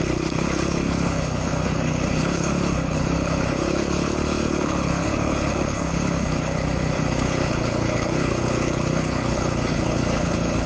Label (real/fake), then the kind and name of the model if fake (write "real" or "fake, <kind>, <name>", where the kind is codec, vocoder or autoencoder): fake, codec, HILCodec